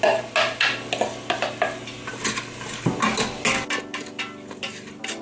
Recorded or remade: recorded